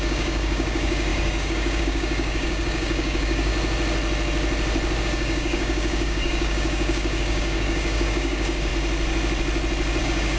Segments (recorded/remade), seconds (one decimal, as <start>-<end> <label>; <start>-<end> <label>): 0.0-3.5 remade; 3.5-5.0 recorded; 5.0-8.7 remade; 8.7-10.0 recorded; 10.0-10.4 remade